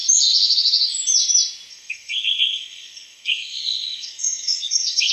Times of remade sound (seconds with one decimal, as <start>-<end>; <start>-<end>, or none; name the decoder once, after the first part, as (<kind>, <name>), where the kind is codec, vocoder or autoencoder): 1.7-5.1 (codec, SNAC)